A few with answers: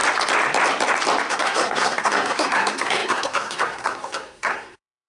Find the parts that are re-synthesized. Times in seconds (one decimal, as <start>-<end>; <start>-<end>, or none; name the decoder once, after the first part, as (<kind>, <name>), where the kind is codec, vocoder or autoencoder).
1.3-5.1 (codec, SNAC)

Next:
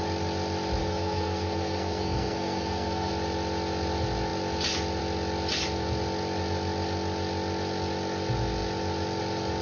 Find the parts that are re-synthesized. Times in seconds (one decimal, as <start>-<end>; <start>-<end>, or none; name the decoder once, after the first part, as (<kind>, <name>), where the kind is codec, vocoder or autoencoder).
0.8-3.1 (codec, SNAC)

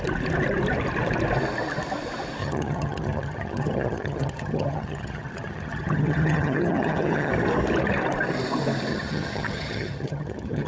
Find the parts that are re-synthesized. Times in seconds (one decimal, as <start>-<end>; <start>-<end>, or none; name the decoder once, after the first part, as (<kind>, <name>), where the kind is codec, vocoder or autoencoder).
2.4-7.3 (vocoder, HiFi-GAN); 8.9-10.7

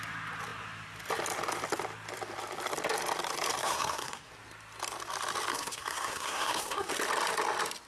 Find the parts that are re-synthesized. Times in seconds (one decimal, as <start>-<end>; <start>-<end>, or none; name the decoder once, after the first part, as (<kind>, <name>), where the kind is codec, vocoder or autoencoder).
3.6-4.3 (codec, SNAC); 5.5-6.9

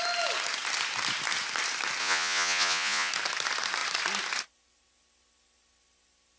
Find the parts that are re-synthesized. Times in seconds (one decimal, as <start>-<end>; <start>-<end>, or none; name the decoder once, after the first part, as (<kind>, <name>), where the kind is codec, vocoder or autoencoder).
2.0-3.1 (vocoder, Vocos)